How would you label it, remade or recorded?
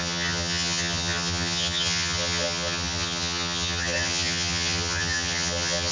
remade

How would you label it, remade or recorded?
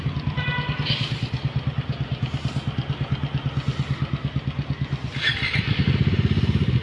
recorded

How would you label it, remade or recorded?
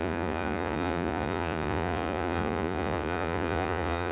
remade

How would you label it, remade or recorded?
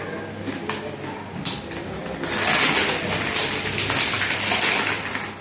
recorded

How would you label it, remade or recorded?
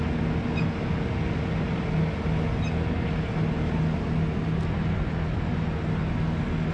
recorded